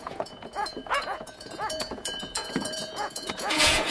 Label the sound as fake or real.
fake